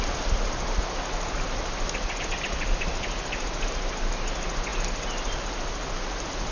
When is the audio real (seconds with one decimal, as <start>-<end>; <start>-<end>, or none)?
0.0-6.5